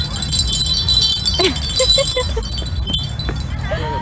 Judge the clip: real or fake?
real